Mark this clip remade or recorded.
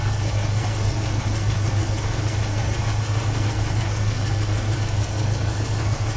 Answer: remade